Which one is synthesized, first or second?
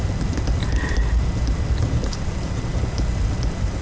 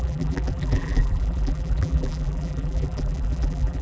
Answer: second